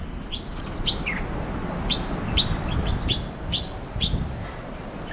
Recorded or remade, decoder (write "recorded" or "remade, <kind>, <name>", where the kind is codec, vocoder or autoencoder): recorded